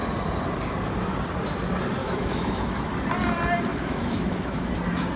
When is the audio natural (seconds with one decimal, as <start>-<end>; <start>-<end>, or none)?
0.0-2.0; 2.9-3.7; 4.7-5.2